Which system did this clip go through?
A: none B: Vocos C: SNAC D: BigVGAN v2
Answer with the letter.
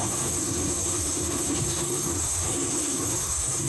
C